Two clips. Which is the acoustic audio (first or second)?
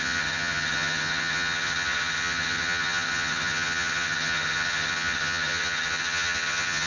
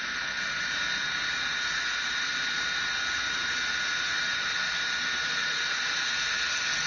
second